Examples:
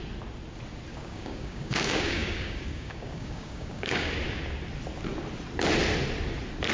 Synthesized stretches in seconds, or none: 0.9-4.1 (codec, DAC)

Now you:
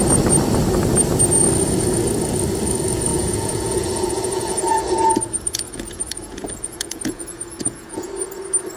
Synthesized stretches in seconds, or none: 3.1-8.1 (vocoder, Vocos)

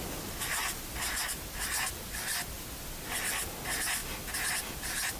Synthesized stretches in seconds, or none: none

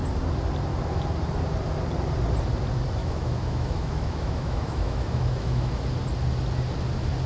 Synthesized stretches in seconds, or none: 3.0-5.8 (autoencoder, DAC-VAE)